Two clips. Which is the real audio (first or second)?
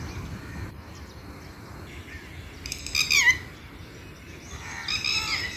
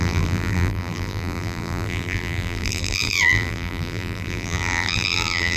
first